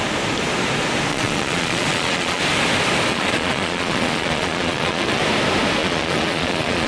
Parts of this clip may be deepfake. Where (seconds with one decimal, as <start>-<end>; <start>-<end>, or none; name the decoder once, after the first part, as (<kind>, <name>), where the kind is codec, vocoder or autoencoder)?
1.1-2.4 (vocoder, Vocos); 3.1-5.2; 5.8-6.9